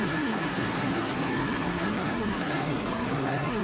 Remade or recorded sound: remade